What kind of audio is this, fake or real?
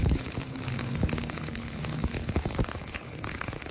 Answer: fake